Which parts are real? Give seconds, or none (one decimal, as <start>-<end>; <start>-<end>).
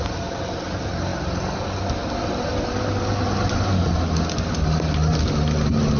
0.0-6.0